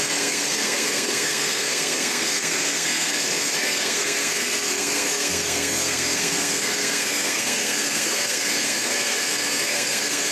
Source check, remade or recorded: remade